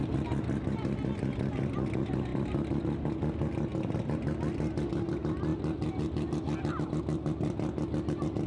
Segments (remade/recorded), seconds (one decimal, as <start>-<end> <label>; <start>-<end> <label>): 0.0-8.5 recorded